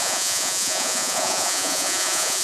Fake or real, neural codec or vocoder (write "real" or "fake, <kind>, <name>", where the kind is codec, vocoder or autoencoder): fake, vocoder, Vocos